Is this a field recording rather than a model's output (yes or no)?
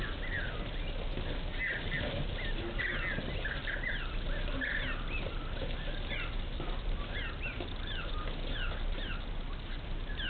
yes